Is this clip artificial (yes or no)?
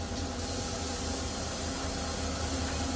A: no